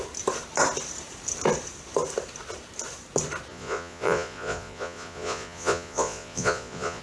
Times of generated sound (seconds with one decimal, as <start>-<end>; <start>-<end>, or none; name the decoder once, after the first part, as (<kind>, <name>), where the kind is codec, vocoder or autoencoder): 3.5-7.0 (vocoder, Vocos)